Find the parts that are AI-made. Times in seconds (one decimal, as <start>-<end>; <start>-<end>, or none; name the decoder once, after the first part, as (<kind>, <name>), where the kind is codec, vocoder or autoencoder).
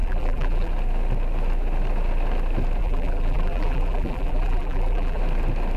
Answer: 0.0-0.7 (vocoder, BigVGAN v2); 2.8-5.2